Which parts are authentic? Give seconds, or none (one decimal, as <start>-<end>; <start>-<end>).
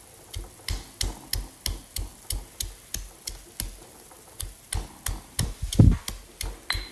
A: 0.0-6.9